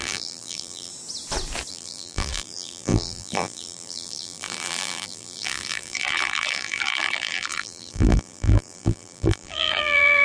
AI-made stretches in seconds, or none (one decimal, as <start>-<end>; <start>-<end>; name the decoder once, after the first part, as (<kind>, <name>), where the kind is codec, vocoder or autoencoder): 0.0-0.9 (vocoder, BigVGAN v2); 1.7-10.2